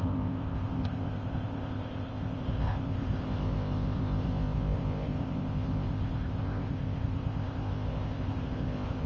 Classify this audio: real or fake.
fake